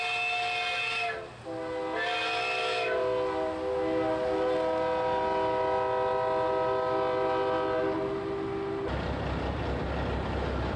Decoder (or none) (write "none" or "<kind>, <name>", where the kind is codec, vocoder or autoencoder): none